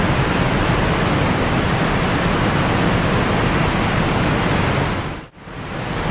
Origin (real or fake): real